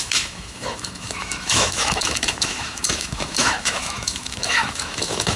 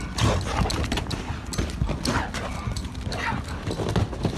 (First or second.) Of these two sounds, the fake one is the first